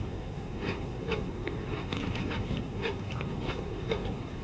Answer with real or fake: fake